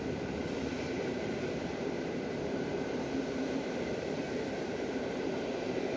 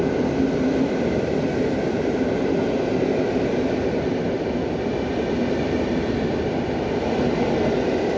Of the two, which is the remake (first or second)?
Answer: first